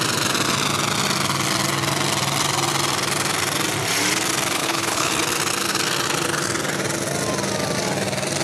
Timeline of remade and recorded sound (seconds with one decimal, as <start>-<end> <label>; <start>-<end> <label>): 0.0-4.6 recorded; 4.6-5.1 remade; 5.1-8.4 recorded